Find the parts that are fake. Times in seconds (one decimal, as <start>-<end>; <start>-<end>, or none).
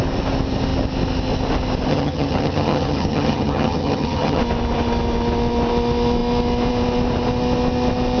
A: 1.9-4.4